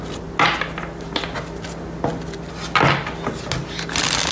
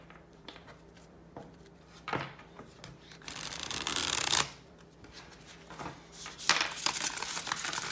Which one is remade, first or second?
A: second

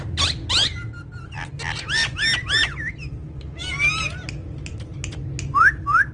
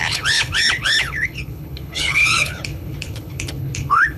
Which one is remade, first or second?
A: second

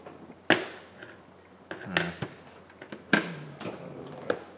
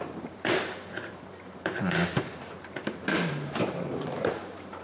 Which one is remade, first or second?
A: second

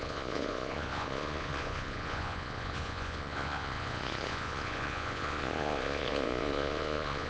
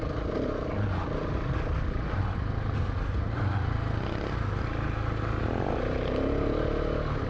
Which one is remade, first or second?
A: first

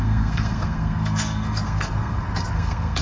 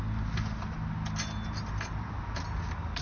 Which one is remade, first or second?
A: first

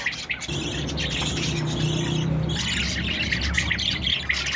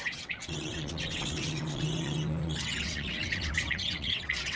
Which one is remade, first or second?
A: second